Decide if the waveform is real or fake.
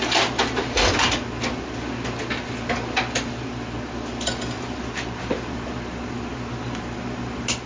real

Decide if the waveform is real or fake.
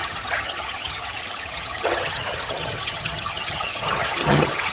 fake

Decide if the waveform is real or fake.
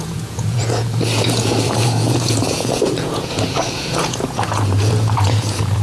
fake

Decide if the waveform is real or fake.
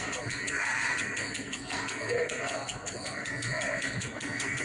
fake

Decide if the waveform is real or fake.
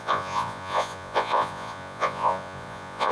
fake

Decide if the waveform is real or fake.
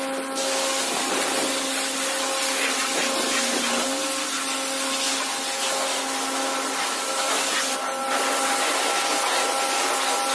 real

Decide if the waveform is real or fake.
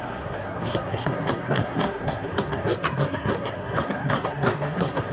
fake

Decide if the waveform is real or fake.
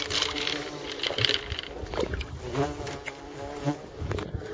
real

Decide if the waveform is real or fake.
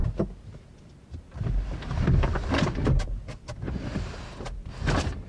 real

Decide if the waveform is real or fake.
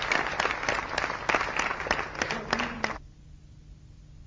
real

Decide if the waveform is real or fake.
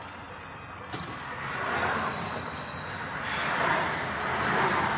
real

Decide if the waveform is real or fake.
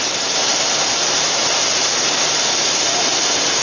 real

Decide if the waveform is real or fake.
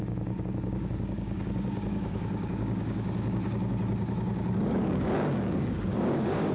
fake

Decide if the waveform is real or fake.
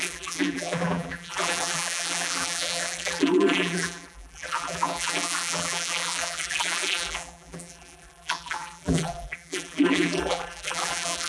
fake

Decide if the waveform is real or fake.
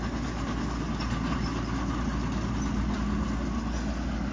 real